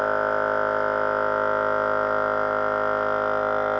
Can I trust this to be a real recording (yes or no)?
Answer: yes